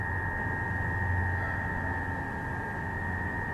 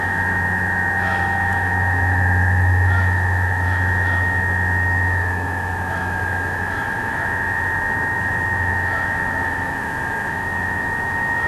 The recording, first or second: first